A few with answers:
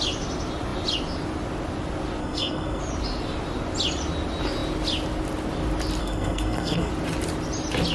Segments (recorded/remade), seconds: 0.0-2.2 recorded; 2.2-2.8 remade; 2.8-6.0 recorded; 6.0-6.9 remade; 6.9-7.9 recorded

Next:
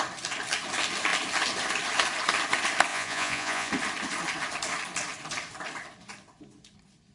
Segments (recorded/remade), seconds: 0.0-2.9 recorded; 2.9-3.7 remade; 3.7-7.1 recorded

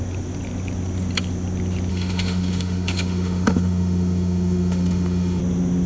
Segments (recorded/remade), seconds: 0.0-1.9 recorded; 1.9-5.4 remade; 5.4-5.9 recorded

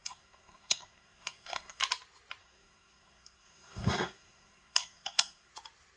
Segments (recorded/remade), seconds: 0.0-1.8 remade; 1.8-2.4 recorded; 2.4-5.5 remade; 5.5-6.0 recorded

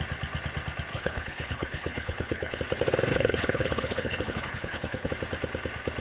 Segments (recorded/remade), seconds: 0.0-0.9 recorded; 0.9-2.6 remade; 2.6-3.1 recorded; 3.1-5.1 remade; 5.1-6.0 recorded